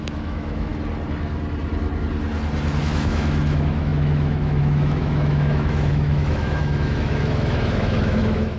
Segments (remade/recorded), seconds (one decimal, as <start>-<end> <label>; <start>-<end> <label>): 0.0-0.7 remade; 0.7-2.8 recorded; 2.8-8.6 remade